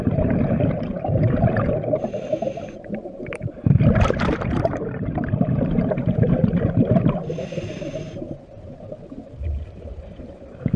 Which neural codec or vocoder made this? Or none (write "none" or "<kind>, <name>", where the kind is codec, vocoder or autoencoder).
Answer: vocoder, BigVGAN v2